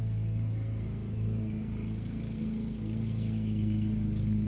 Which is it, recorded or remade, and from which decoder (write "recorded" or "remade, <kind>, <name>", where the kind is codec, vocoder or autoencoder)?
remade, codec, SNAC